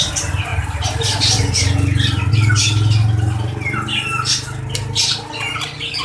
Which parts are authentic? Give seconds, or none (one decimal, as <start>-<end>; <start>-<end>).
0.0-6.0